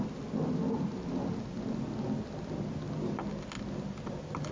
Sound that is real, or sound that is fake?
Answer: real